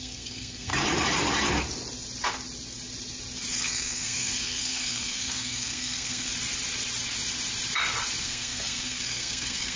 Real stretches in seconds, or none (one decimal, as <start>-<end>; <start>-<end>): 0.7-3.5; 6.3-8.2